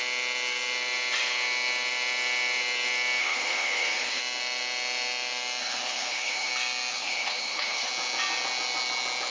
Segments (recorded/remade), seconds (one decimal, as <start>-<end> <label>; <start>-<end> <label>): 0.0-3.2 recorded; 3.2-4.2 remade; 4.2-5.6 recorded; 5.6-6.5 remade; 6.5-6.9 recorded; 6.9-7.9 remade; 7.9-9.3 recorded